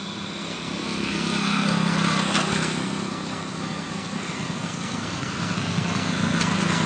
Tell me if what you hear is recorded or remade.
remade